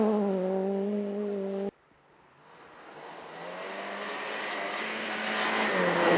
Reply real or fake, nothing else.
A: real